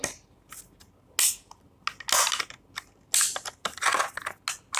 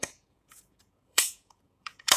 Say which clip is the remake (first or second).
second